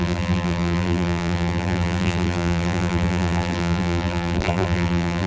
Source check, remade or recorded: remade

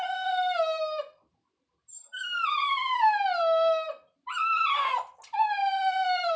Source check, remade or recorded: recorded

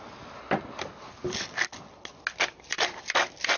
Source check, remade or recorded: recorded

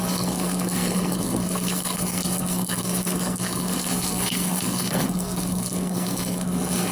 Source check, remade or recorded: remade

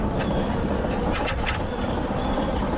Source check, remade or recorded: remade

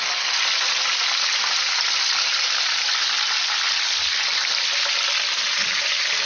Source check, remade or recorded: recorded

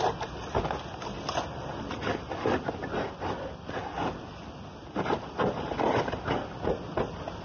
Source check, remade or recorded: recorded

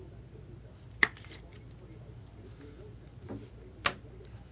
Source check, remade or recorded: recorded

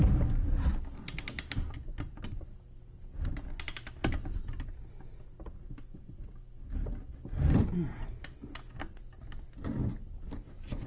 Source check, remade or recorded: recorded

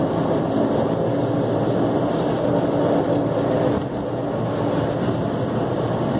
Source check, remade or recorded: recorded